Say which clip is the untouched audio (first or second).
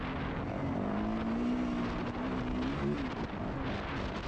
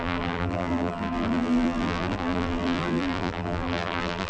first